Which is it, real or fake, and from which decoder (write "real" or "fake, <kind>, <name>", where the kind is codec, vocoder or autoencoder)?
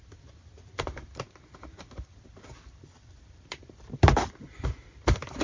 fake, vocoder, BigVGAN v2